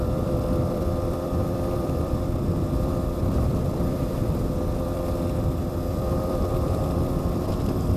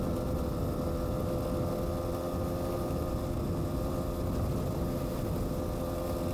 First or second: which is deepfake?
first